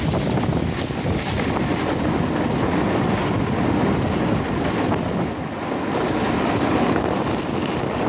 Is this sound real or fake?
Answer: real